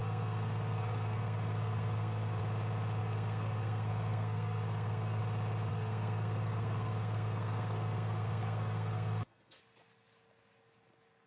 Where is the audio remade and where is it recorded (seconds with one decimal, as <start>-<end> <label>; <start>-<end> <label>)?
0.0-2.4 remade; 2.4-3.0 recorded; 3.0-5.2 remade; 5.2-5.7 recorded; 5.7-9.6 remade; 9.6-11.3 recorded